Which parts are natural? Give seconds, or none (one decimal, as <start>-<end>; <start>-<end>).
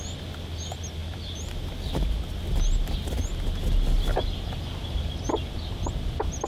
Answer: 0.0-1.0; 1.7-6.5